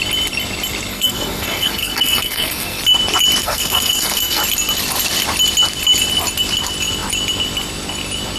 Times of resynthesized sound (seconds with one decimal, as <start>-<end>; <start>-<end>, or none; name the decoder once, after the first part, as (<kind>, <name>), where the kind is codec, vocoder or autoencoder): 0.9-2.8 (codec, SNAC); 3.4-4.4